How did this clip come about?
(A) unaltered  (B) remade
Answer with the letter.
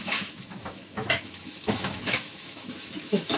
B